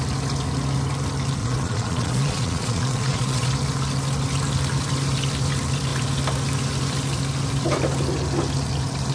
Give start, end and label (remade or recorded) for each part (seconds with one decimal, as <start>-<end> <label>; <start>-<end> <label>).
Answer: 0.0-1.4 recorded; 1.4-3.5 remade; 3.5-9.1 recorded